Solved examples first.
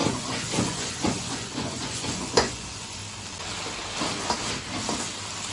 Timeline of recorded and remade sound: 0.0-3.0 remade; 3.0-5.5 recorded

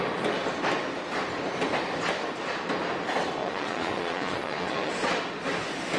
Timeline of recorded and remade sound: 0.0-3.4 recorded; 3.4-4.9 remade; 4.9-6.0 recorded